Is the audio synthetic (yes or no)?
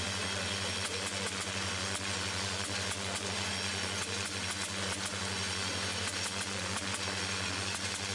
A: yes